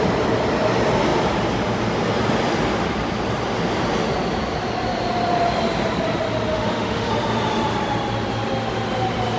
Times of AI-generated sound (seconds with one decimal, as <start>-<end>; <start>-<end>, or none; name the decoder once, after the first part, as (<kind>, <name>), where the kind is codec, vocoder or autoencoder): 6.5-7.1 (autoencoder, DAC-VAE)